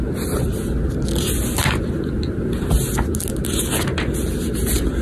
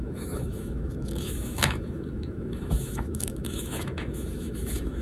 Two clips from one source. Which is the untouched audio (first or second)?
first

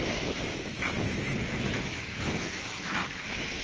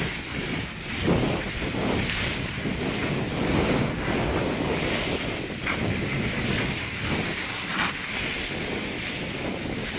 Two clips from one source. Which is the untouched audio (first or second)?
second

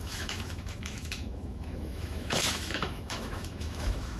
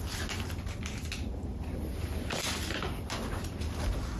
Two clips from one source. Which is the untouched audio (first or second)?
second